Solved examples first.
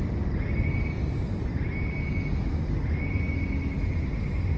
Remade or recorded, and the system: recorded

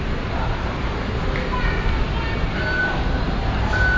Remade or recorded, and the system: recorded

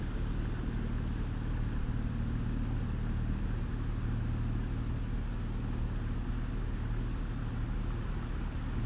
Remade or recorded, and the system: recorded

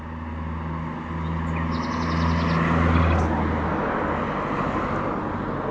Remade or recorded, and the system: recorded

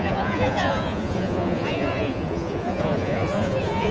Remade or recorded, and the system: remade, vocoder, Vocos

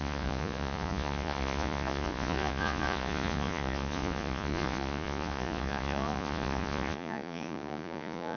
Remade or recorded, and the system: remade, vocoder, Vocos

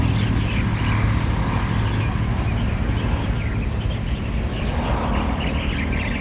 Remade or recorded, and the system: recorded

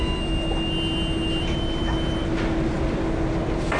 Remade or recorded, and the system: recorded